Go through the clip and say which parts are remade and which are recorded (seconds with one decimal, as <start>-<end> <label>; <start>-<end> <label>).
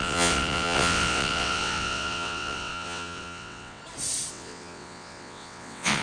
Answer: 0.0-3.8 remade; 3.8-4.3 recorded; 4.3-6.0 remade